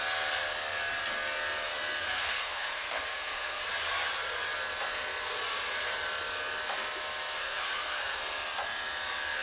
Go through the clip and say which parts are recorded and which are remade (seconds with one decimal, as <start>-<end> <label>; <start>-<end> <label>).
0.0-2.0 recorded; 2.0-3.6 remade; 3.6-7.4 recorded; 7.4-8.2 remade; 8.2-9.4 recorded